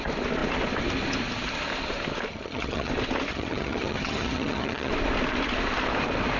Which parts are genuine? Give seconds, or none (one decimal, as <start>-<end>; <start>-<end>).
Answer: 0.0-2.3; 2.9-3.3; 4.9-6.4